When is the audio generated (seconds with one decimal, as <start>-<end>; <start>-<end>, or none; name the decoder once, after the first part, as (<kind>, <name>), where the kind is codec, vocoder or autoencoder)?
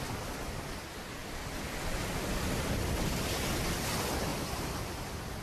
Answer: none